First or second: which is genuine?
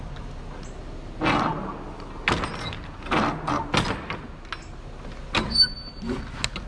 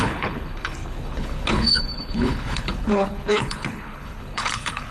first